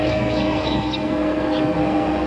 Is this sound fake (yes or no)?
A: yes